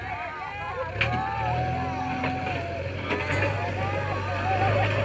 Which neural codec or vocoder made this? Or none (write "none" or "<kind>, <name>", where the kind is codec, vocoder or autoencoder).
none